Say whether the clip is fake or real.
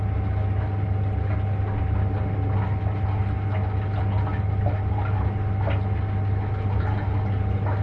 real